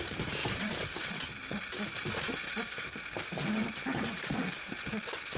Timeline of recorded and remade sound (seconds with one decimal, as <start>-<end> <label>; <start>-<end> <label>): 0.0-0.4 remade; 0.4-1.7 recorded; 1.7-5.4 remade